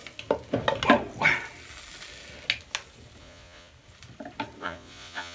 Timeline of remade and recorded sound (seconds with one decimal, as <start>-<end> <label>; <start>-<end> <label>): 0.0-3.2 recorded; 3.2-3.7 remade; 3.7-4.6 recorded; 4.6-5.3 remade